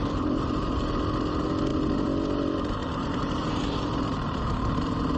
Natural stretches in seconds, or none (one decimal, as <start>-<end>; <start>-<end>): 0.6-1.7; 4.8-5.2